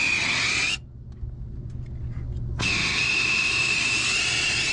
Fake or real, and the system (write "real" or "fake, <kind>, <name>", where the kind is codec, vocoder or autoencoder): real